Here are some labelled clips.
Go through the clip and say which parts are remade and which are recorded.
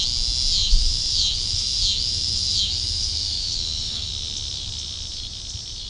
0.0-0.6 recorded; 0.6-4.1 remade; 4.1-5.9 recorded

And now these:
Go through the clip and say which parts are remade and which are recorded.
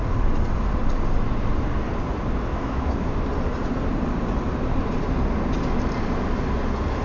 0.0-2.5 recorded; 2.5-3.1 remade; 3.1-7.0 recorded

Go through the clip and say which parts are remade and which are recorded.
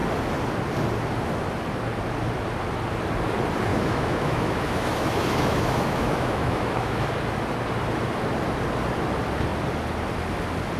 0.0-3.7 recorded; 3.7-7.1 remade; 7.1-10.8 recorded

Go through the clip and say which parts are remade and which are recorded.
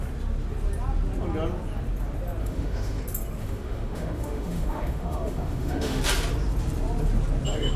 0.0-2.4 recorded; 2.4-3.0 remade; 3.0-3.4 recorded; 3.4-6.0 remade; 6.0-7.8 recorded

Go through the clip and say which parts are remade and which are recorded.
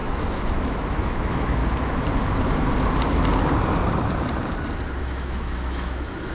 0.0-1.6 remade; 1.6-5.0 recorded; 5.0-6.3 remade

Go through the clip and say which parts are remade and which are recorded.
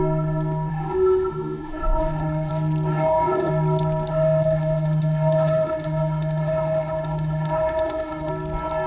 0.0-0.7 recorded; 0.7-2.5 remade; 2.5-2.9 recorded; 2.9-3.5 remade; 3.5-4.1 recorded; 4.1-8.3 remade; 8.3-8.9 recorded